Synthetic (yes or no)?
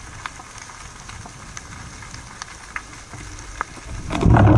no